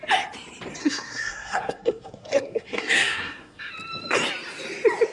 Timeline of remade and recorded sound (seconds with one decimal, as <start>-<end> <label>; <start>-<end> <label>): 0.0-0.8 recorded; 0.8-3.7 remade; 3.7-5.1 recorded